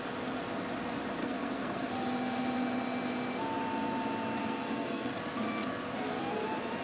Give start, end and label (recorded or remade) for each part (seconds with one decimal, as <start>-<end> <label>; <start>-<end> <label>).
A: 0.0-1.2 recorded; 1.2-1.9 remade; 1.9-4.4 recorded; 4.4-5.1 remade; 5.1-6.8 recorded